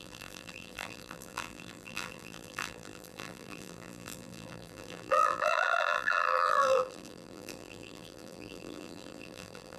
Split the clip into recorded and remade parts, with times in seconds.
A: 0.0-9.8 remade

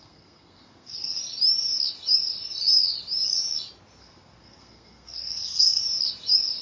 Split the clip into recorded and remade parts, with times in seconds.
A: 0.0-1.2 remade; 1.2-4.0 recorded; 4.0-5.8 remade; 5.8-6.6 recorded

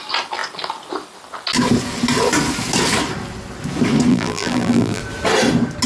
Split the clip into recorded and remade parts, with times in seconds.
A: 0.0-4.1 recorded; 4.1-5.0 remade; 5.0-5.9 recorded